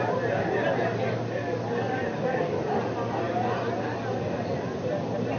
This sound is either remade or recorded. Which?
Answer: recorded